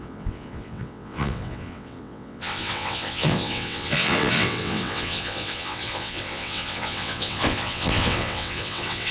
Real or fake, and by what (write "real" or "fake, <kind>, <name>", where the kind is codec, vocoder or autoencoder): fake, vocoder, WaveNeXt